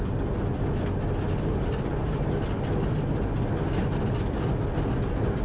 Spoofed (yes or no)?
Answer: no